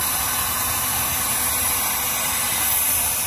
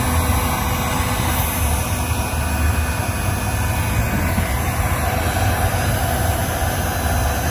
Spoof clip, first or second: first